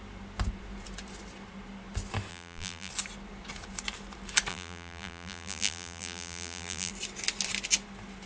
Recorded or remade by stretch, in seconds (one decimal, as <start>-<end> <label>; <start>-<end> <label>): 0.0-2.3 recorded; 2.3-2.9 remade; 2.9-4.5 recorded; 4.5-6.9 remade; 6.9-8.3 recorded